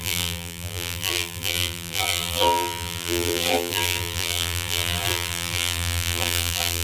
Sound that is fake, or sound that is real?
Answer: fake